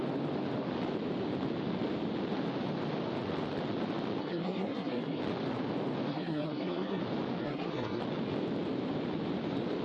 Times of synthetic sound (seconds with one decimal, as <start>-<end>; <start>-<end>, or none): 4.2-5.2; 6.1-7.0; 7.4-8.0